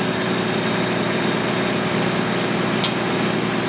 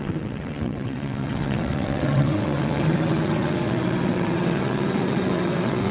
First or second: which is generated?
second